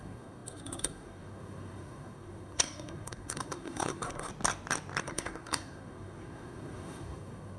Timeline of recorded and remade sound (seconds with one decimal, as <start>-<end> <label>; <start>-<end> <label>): 0.0-4.3 remade; 4.3-5.0 recorded; 5.0-7.6 remade